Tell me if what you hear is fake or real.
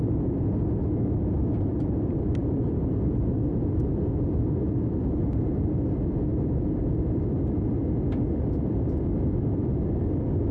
real